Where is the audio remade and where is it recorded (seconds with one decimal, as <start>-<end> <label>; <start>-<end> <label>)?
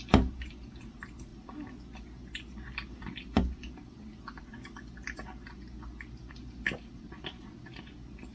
0.0-8.3 recorded